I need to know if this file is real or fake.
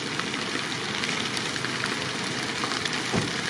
real